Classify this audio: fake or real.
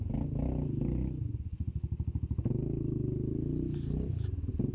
real